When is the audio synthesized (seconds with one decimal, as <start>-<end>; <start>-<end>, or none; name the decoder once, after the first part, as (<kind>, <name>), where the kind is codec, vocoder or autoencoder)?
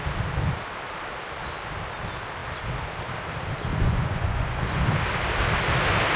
3.7-4.8 (vocoder, Vocos)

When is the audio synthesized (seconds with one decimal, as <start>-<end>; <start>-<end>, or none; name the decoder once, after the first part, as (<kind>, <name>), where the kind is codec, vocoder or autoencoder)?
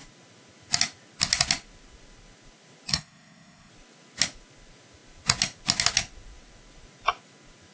2.9-3.7 (codec, SNAC)